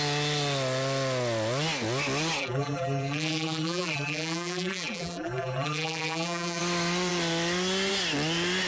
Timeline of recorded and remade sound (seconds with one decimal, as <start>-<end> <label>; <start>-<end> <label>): 0.0-2.4 recorded; 2.4-6.6 remade; 6.6-8.7 recorded